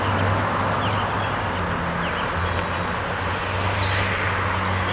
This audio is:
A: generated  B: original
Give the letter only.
B